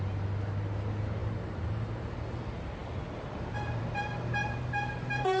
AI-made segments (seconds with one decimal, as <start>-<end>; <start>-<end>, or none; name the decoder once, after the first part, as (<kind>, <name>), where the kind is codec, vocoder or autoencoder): 1.2-2.4 (vocoder, BigVGAN v2); 4.4-5.4